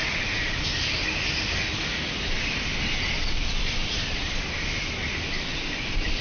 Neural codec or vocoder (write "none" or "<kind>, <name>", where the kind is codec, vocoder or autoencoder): none